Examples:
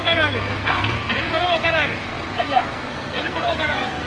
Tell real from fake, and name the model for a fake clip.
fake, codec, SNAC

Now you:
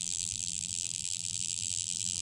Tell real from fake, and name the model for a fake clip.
fake, vocoder, BigVGAN v2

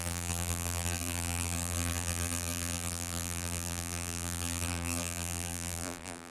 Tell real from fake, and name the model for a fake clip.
fake, vocoder, BigVGAN v2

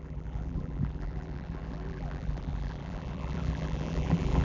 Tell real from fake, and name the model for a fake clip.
fake, vocoder, BigVGAN v2